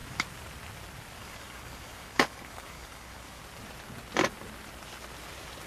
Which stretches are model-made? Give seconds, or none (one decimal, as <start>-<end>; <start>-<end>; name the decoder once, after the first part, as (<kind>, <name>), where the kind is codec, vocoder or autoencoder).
1.2-3.4 (codec, DAC)